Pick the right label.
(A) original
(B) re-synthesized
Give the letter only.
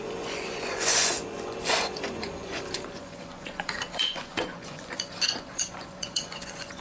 B